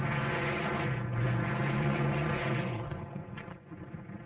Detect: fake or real fake